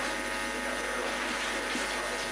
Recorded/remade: recorded